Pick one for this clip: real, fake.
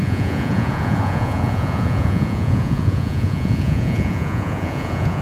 fake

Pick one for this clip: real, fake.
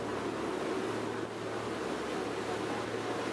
real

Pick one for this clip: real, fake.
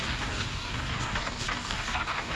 fake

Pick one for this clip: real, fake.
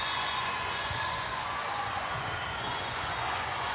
fake